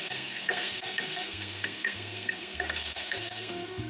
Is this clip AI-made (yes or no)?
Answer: yes